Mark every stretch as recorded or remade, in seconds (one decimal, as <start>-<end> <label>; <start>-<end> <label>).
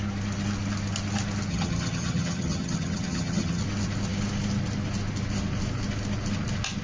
0.0-1.5 recorded; 1.5-3.6 remade; 3.6-6.8 recorded